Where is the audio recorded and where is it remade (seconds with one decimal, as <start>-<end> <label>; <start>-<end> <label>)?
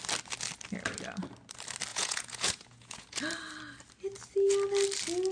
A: 0.0-1.9 recorded; 1.9-3.2 remade; 3.2-5.3 recorded